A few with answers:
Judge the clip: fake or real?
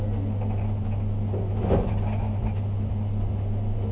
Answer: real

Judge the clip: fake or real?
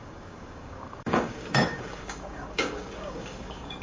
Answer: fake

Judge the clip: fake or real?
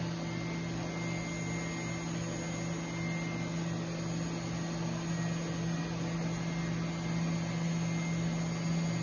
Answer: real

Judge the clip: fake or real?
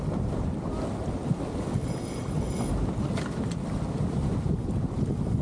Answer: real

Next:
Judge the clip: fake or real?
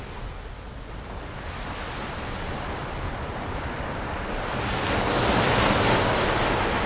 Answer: real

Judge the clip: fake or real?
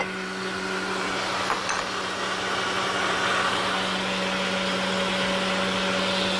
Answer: real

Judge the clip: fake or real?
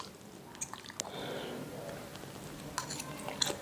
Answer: real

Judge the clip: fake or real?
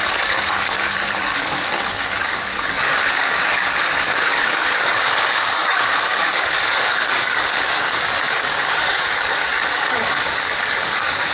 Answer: fake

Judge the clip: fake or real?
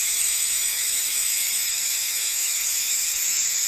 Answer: fake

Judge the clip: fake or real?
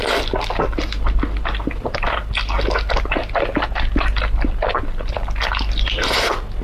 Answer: real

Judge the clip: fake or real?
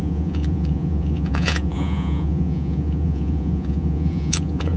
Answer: fake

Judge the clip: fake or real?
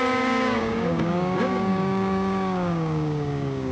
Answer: fake